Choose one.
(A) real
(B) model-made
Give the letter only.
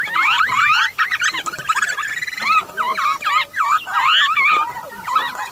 A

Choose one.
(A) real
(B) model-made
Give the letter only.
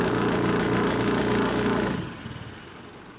A